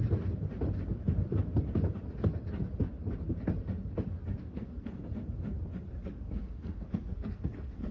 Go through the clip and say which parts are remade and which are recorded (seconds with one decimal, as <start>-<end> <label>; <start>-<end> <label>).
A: 0.0-4.4 recorded; 4.4-5.0 remade; 5.0-6.0 recorded; 6.0-7.9 remade